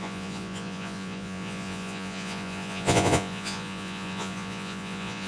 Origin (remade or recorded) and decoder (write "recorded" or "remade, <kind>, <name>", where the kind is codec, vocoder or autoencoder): remade, vocoder, Vocos